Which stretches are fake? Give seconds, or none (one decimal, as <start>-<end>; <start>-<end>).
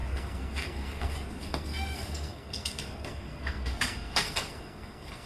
0.0-5.3